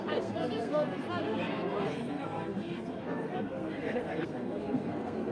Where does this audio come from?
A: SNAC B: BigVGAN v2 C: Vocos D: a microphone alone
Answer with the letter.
A